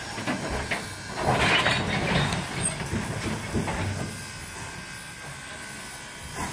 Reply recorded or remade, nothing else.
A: recorded